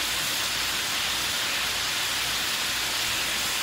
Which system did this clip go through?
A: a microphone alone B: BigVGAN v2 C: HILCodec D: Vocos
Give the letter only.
A